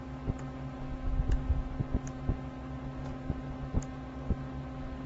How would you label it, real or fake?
real